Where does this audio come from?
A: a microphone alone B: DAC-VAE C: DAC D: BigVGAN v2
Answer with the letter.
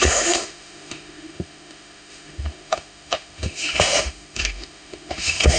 B